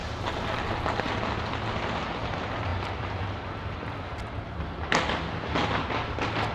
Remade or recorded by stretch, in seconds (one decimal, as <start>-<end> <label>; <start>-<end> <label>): 0.0-1.1 remade; 1.1-2.7 recorded; 2.7-4.9 remade; 4.9-6.5 recorded